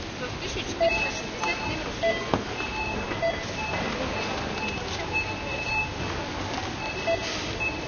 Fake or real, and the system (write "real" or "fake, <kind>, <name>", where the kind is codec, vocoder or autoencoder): real